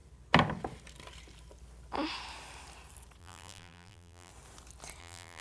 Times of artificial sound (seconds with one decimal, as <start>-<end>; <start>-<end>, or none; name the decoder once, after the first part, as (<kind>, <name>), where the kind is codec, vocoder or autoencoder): 3.2-4.3 (vocoder, BigVGAN v2); 5.0-5.4